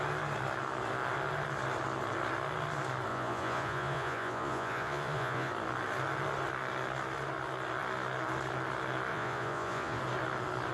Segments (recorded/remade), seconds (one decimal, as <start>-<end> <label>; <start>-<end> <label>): 0.0-3.1 recorded; 3.1-5.5 remade; 5.5-9.1 recorded; 9.1-10.0 remade; 10.0-10.7 recorded